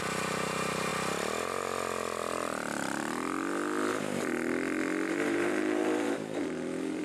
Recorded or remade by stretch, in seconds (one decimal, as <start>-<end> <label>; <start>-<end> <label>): 0.0-0.9 remade; 0.9-5.1 recorded; 5.1-7.0 remade